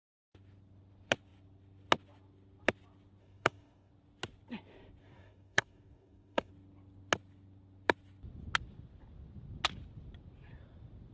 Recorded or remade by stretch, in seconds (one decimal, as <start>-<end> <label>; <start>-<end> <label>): 0.0-3.2 recorded; 3.2-3.9 remade; 3.9-5.0 recorded; 5.0-6.5 remade; 6.5-11.1 recorded